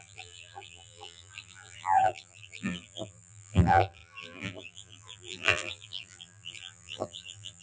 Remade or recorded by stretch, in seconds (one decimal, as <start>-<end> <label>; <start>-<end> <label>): 0.0-7.6 remade